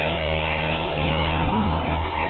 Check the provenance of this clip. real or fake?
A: fake